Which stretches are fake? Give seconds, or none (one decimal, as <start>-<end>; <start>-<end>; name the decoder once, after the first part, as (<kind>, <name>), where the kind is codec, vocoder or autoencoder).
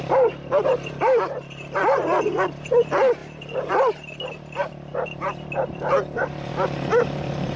0.0-7.6 (vocoder, BigVGAN v2)